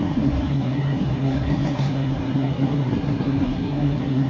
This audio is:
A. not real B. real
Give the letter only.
A